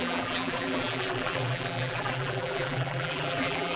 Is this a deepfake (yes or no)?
yes